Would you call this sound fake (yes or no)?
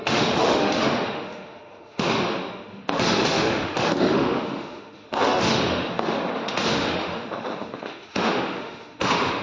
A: yes